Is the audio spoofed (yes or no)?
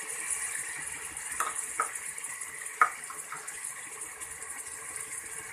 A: no